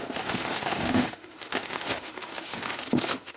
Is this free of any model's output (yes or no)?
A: no